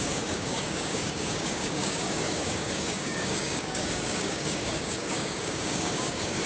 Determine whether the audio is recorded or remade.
remade